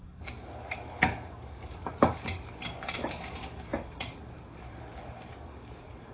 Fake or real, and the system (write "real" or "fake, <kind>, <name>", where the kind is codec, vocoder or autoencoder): fake, codec, DAC